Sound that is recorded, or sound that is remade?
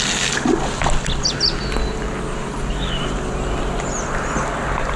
recorded